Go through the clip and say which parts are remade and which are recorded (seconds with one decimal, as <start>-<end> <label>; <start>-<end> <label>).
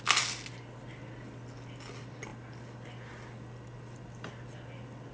0.0-5.1 recorded